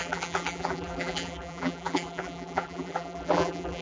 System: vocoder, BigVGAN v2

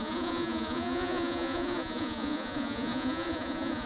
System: vocoder, Vocos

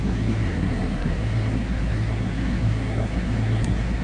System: codec, SNAC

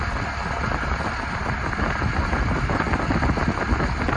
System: none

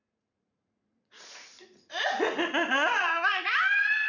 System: vocoder, Vocos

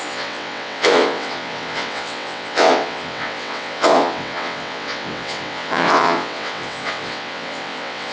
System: vocoder, WaveNeXt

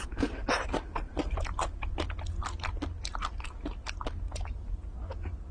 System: none